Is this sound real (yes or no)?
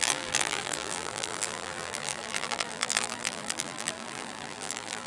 no